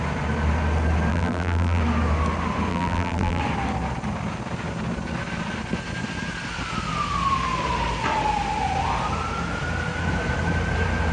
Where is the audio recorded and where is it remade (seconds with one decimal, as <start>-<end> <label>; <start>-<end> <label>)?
0.0-1.1 recorded; 1.1-1.8 remade; 1.8-2.7 recorded; 2.7-3.4 remade; 3.4-11.1 recorded